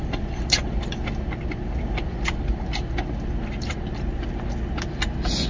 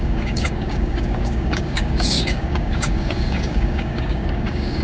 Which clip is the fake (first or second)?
second